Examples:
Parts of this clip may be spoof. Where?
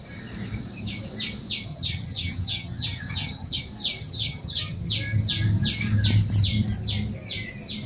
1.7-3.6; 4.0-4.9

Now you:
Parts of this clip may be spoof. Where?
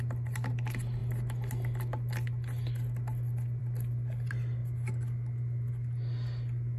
none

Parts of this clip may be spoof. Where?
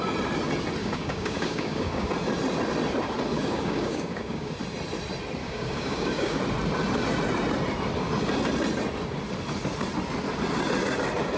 0.8-2.1; 3.3-4.5; 5.4-6.4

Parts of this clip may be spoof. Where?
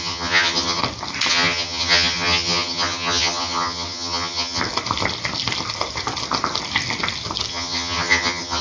0.0-0.8; 1.3-4.6; 7.5-8.6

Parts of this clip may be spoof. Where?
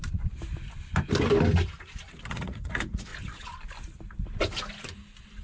2.3-3.1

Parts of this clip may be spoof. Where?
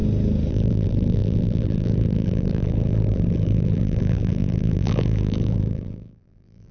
0.5-6.7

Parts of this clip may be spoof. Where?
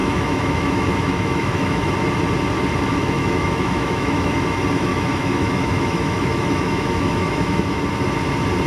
0.0-1.9; 3.0-4.3; 4.9-7.8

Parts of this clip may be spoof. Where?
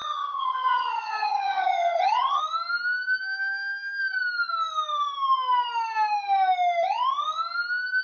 0.0-2.4